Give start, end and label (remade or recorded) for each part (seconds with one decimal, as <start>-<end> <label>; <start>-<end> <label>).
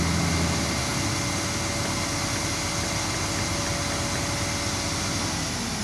0.0-5.8 recorded